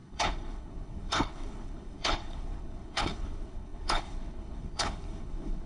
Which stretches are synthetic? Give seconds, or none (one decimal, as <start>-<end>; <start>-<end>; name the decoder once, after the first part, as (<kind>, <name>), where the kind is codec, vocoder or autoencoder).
0.0-5.7 (codec, HILCodec)